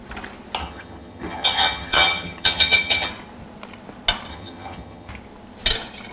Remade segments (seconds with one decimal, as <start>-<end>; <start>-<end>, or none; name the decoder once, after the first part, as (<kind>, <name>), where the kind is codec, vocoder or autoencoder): 0.6-3.1 (vocoder, HiFi-GAN); 4.3-5.1